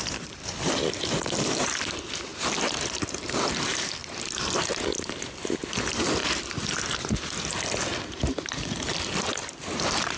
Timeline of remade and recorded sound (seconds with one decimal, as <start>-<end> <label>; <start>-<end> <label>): 0.0-2.3 remade; 2.3-3.0 recorded; 3.0-4.0 remade; 4.0-4.8 recorded; 4.8-10.2 remade